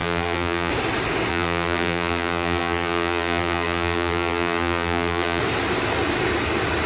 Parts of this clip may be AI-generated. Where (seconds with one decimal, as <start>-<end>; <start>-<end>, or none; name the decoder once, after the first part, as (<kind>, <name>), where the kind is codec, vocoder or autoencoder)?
0.0-0.7 (vocoder, BigVGAN v2); 1.3-5.4